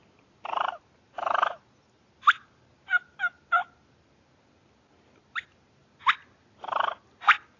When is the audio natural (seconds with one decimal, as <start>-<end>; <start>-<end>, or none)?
0.0-7.6